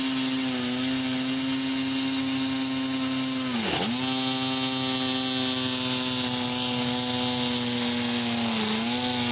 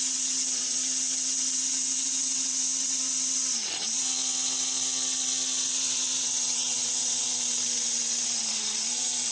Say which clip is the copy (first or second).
second